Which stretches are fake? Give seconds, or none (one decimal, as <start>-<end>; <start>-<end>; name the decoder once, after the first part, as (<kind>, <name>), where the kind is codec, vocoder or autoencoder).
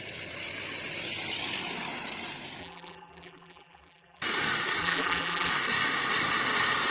2.6-4.2 (vocoder, BigVGAN v2); 4.8-5.5